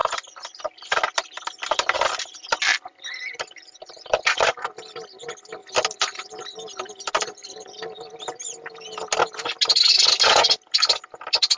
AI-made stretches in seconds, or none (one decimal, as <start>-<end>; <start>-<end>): none